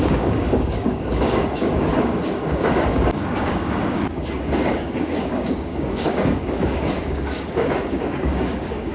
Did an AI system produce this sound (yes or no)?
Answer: yes